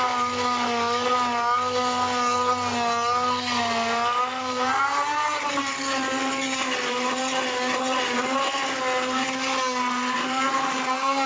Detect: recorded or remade recorded